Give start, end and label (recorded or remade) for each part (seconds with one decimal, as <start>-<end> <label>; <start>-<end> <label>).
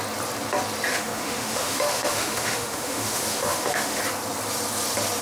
0.0-0.9 recorded; 0.9-4.0 remade; 4.0-5.2 recorded